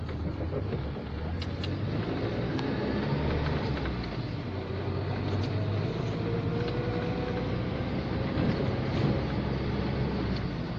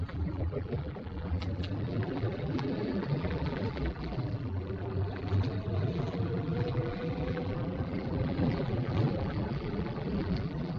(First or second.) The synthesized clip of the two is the second